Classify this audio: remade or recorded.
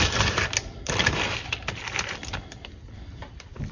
remade